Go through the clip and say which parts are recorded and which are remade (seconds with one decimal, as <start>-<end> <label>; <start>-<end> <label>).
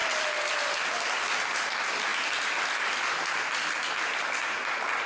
0.0-5.1 recorded